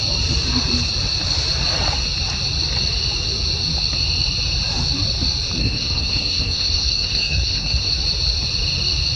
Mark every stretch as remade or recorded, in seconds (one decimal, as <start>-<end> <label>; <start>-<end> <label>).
0.0-5.6 recorded; 5.6-7.9 remade; 7.9-9.2 recorded